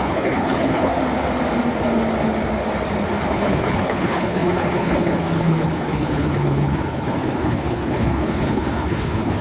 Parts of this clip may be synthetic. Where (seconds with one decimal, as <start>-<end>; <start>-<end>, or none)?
0.0-0.9; 3.2-9.4